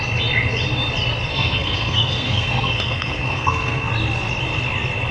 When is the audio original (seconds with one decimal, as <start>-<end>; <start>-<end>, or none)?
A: 0.0-1.3; 3.9-5.1